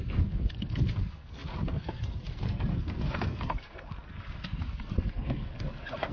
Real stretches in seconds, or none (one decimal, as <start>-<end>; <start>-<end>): none